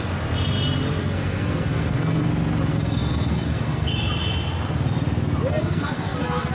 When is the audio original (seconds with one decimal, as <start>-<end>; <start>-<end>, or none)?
0.0-1.0; 2.3-2.7; 3.9-5.5

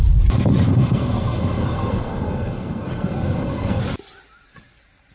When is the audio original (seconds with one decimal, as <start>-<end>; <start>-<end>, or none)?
0.0-0.7; 3.8-5.1